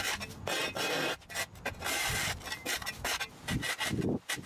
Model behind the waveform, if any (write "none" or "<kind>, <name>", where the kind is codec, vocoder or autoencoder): none